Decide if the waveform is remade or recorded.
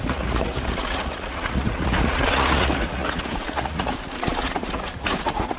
remade